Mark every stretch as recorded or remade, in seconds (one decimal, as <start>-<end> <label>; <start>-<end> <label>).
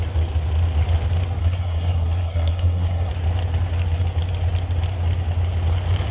0.0-1.4 recorded; 1.4-3.1 remade; 3.1-6.1 recorded